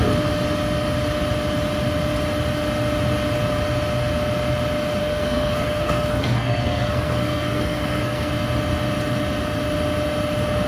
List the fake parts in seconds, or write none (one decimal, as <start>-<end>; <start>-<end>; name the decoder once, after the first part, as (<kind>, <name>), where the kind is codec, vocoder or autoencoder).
5.0-8.3 (codec, SNAC)